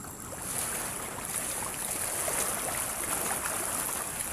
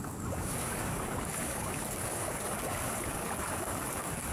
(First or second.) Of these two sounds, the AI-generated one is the second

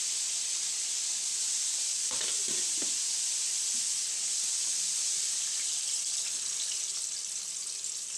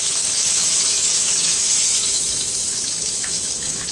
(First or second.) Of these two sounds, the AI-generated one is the second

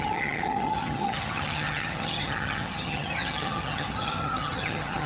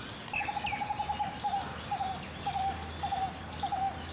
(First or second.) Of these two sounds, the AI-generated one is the first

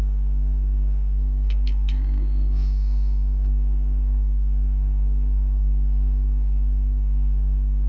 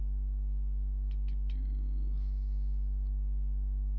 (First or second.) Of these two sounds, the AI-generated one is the first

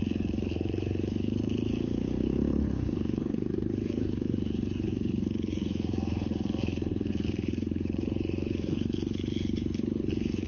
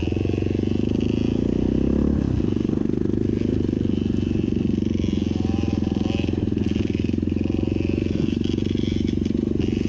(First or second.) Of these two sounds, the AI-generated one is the first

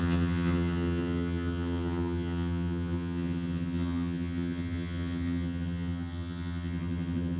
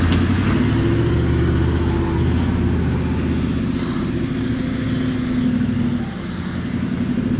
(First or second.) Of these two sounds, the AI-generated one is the first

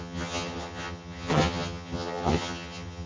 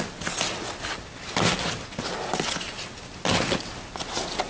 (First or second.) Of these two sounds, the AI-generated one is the first